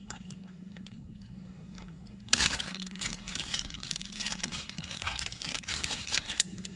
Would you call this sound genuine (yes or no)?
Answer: no